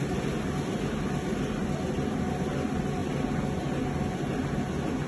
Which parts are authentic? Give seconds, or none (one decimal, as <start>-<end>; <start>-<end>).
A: 0.0-5.1